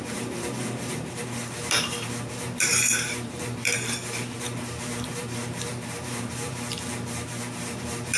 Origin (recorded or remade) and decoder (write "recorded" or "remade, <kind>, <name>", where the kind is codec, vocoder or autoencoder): remade, vocoder, BigVGAN v2